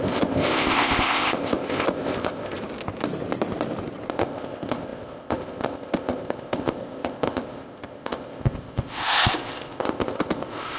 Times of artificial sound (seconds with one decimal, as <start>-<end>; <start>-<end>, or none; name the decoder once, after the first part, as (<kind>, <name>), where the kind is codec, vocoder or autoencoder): 0.0-2.6 (codec, ZipCodec); 4.1-10.8